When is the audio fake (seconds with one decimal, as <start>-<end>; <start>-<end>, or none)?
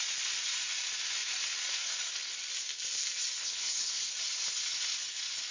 3.4-4.0